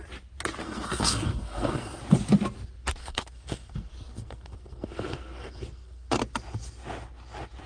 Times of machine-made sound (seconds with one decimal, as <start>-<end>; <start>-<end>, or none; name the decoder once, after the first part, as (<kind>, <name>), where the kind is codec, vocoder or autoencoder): 0.6-2.0 (codec, SNAC); 3.0-6.1